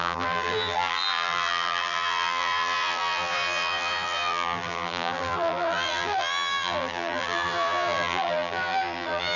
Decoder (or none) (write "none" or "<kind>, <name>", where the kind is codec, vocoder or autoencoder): vocoder, BigVGAN v2